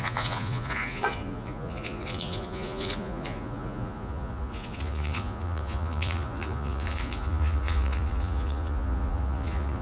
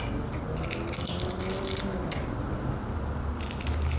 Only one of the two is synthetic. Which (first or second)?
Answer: first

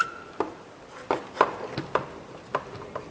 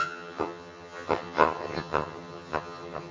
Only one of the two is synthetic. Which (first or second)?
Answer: second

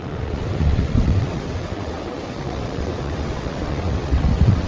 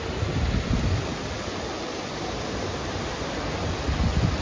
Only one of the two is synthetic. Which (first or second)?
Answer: first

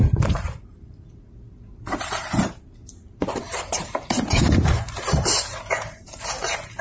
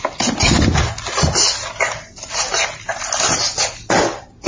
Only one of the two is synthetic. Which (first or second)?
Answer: first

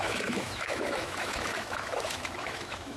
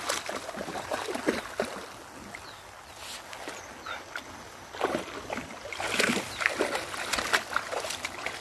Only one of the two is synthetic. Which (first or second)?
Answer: first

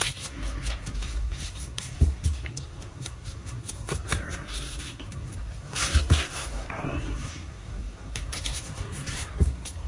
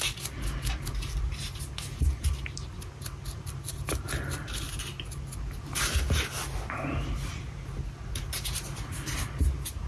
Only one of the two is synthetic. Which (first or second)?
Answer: first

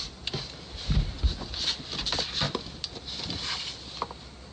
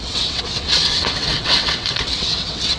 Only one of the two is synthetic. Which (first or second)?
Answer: second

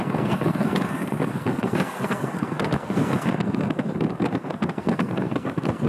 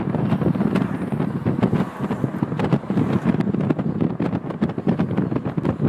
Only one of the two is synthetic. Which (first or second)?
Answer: first